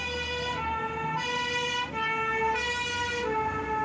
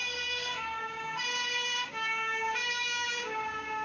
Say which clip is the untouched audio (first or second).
first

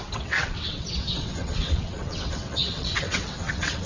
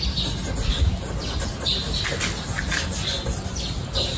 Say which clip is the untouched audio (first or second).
second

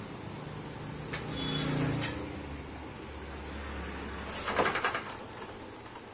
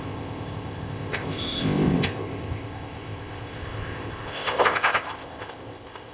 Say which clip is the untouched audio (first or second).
first